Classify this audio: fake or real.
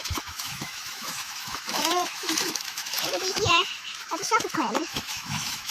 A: fake